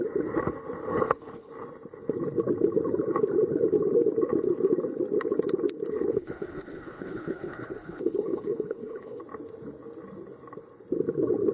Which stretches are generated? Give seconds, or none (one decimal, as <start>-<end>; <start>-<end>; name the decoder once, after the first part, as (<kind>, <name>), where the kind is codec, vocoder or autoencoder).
0.9-1.5 (codec, HILCodec); 6.1-9.2